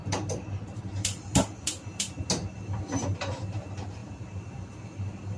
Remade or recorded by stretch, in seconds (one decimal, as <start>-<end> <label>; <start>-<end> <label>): 0.0-2.3 remade; 2.3-4.0 recorded; 4.0-4.5 remade; 4.5-5.4 recorded